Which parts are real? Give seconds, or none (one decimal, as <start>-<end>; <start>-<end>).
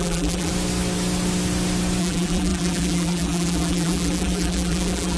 0.5-2.0